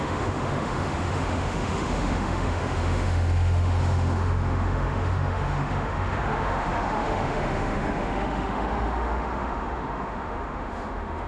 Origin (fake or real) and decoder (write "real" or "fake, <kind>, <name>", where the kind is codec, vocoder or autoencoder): fake, autoencoder, DAC-VAE